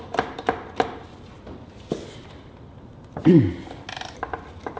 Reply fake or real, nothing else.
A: real